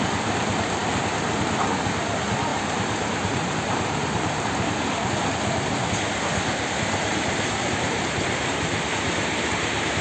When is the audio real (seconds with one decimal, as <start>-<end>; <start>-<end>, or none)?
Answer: 0.0-2.5; 5.1-7.1